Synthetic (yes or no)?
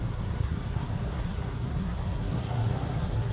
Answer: yes